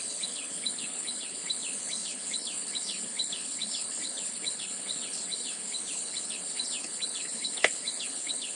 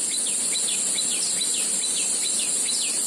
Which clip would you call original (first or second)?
second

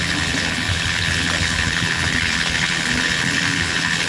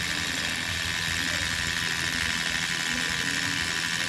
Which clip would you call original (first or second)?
second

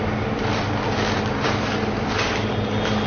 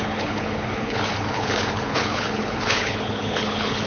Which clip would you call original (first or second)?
first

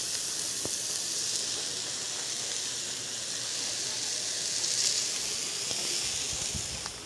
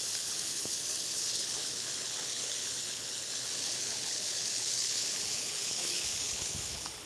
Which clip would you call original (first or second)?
first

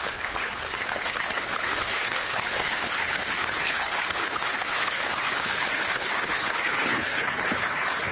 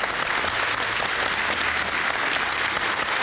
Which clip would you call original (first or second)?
second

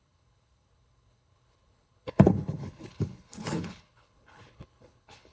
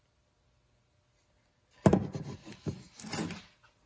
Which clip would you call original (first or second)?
second